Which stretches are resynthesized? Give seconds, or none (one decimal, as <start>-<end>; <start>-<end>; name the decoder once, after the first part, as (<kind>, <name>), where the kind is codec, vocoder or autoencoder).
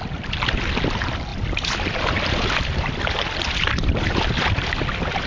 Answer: 1.3-4.5 (vocoder, BigVGAN v2)